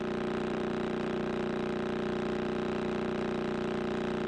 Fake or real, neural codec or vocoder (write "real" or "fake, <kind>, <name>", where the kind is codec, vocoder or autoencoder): real